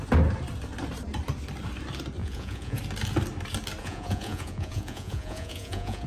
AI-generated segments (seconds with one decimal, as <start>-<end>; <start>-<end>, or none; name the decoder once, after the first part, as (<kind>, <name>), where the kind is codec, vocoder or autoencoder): 2.2-2.8 (vocoder, Vocos); 3.8-6.1